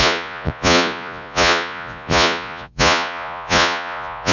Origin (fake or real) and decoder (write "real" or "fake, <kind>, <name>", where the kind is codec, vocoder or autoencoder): fake, vocoder, Vocos